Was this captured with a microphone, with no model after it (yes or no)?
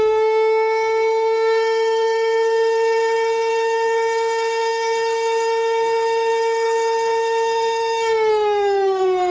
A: no